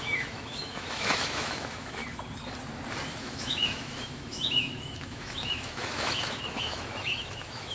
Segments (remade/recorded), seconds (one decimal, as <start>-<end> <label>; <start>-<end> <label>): 0.0-2.0 remade; 2.0-3.2 recorded; 3.2-7.7 remade